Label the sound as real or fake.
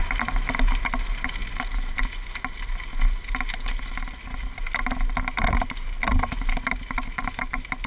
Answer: real